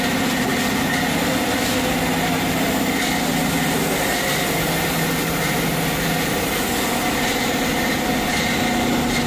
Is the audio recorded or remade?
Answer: recorded